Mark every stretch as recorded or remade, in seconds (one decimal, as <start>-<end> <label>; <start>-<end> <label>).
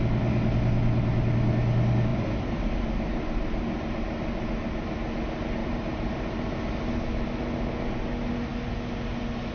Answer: 0.0-2.1 recorded; 2.1-2.7 remade; 2.7-5.6 recorded; 5.6-6.7 remade; 6.7-9.5 recorded